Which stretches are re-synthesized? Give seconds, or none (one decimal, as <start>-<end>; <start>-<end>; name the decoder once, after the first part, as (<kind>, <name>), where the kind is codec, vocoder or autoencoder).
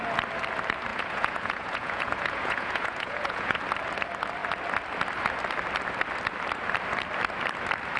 0.9-3.6 (vocoder, Vocos)